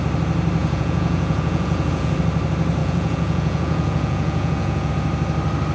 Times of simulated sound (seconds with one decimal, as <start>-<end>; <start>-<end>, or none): 0.6-2.2; 2.8-4.9